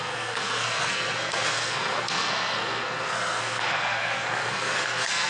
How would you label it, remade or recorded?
remade